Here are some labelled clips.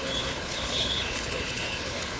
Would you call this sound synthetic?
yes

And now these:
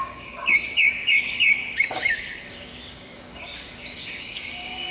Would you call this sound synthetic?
yes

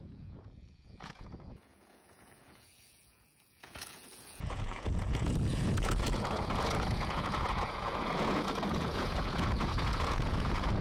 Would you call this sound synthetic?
yes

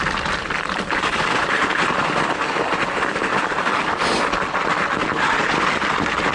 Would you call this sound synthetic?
no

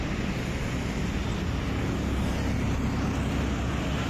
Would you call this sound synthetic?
no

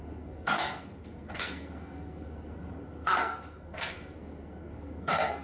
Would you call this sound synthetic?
yes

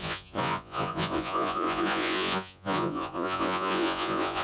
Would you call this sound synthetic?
yes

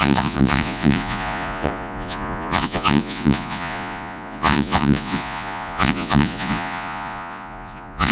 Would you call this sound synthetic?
yes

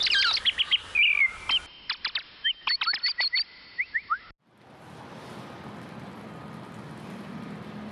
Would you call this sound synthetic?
no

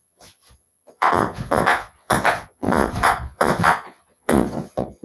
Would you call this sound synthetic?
yes